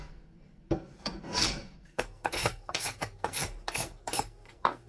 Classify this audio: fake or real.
fake